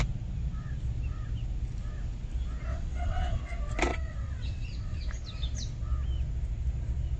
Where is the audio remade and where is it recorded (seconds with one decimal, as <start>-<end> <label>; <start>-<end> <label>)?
0.0-2.7 recorded; 2.7-3.4 remade; 3.4-3.9 recorded; 3.9-5.0 remade; 5.0-7.2 recorded